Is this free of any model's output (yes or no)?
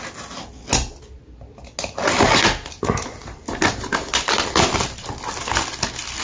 yes